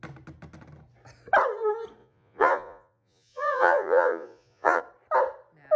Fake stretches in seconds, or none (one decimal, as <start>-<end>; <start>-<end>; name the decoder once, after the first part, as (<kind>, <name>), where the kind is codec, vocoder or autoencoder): 2.0-4.8 (vocoder, Vocos)